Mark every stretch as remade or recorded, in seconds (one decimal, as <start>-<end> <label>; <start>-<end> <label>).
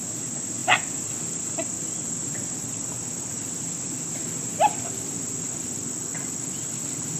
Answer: 0.0-7.2 recorded